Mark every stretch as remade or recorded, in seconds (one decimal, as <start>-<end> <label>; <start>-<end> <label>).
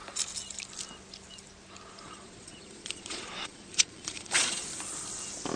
0.0-1.9 recorded; 1.9-4.6 remade; 4.6-5.6 recorded